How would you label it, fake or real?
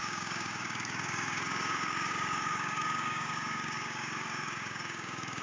fake